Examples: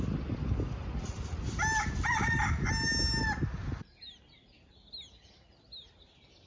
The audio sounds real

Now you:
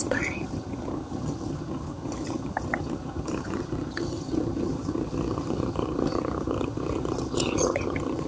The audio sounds fake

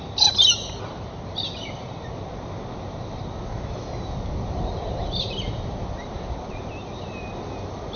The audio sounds real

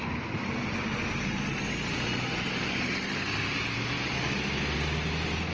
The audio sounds real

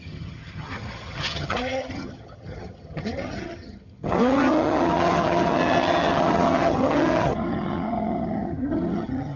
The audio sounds fake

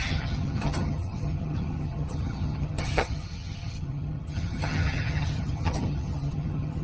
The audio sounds fake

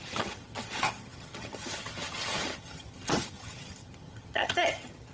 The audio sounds fake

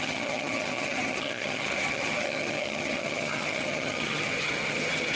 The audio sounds fake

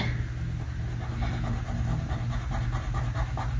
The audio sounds real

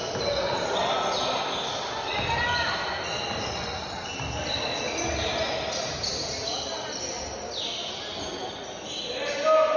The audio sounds real